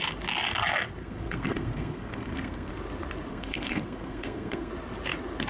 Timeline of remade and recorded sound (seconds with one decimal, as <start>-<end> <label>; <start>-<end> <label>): 0.0-1.0 recorded; 1.0-2.7 remade; 2.7-3.3 recorded; 3.3-4.7 remade; 4.7-5.5 recorded